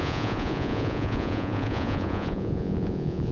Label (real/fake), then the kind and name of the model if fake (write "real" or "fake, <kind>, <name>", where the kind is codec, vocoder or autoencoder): fake, vocoder, Vocos